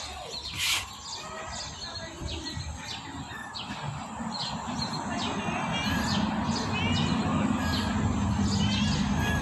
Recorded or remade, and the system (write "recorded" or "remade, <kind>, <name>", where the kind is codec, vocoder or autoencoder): recorded